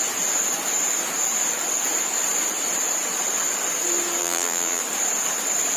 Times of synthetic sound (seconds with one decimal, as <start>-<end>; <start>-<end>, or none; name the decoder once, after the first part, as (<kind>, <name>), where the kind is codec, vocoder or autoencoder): 4.2-4.8 (vocoder, BigVGAN v2)